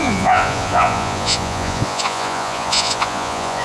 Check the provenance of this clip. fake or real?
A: fake